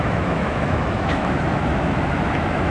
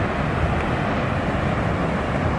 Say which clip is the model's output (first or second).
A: first